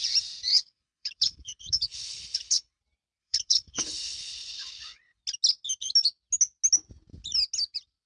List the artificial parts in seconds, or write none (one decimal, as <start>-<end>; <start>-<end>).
0.5-2.8; 3.2-5.2